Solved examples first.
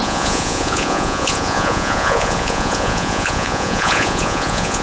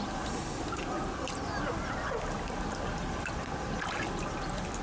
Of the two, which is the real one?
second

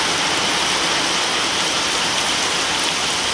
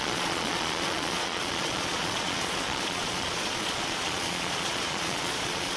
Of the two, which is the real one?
first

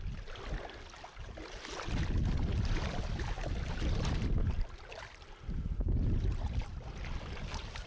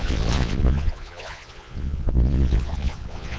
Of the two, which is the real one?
first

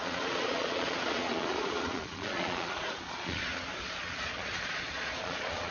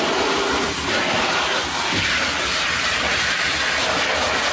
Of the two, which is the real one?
second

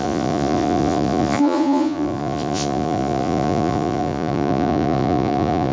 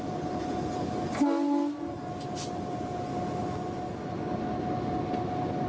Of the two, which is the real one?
second